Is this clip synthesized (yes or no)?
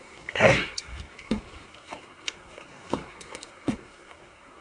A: yes